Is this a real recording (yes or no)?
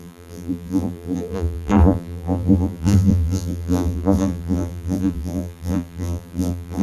no